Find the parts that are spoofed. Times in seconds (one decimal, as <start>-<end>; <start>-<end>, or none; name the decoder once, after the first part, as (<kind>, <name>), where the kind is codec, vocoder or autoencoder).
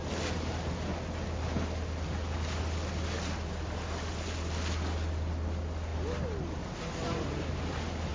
none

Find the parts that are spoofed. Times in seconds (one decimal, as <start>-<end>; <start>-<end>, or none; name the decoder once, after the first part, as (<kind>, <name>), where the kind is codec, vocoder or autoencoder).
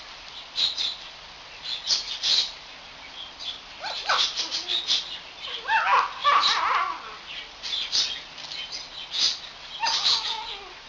6.2-6.8 (vocoder, BigVGAN v2)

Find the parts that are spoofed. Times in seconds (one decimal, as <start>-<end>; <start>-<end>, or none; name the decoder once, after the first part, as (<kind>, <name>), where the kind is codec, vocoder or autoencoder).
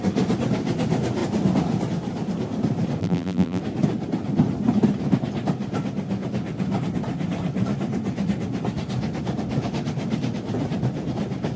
3.0-3.6 (vocoder, BigVGAN v2)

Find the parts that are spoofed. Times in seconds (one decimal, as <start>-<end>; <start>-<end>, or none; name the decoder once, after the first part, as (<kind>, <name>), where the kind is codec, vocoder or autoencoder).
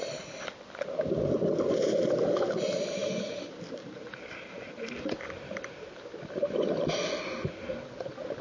3.0-6.0 (vocoder, BigVGAN v2)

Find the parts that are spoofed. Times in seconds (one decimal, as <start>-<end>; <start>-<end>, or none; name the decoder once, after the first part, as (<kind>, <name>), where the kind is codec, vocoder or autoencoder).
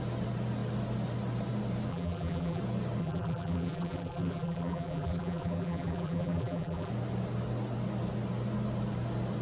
1.9-2.6 (vocoder, BigVGAN v2); 3.0-6.9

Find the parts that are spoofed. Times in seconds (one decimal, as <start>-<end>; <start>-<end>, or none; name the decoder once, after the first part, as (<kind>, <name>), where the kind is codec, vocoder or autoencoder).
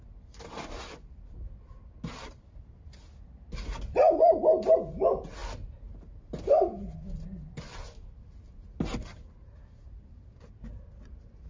none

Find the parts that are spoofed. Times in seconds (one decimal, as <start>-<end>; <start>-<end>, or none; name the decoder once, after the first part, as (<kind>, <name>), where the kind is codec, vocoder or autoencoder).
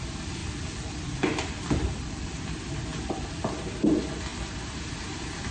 0.4-2.4 (vocoder, BigVGAN v2); 2.9-3.7